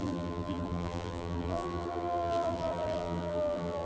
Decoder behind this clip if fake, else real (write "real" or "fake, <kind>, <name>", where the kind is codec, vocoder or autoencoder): fake, vocoder, BigVGAN v2